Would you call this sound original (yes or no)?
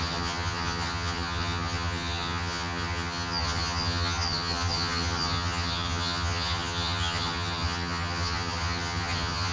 no